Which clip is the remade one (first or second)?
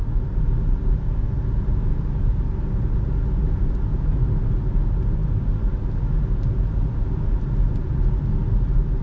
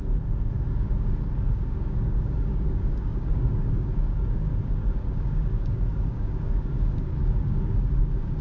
second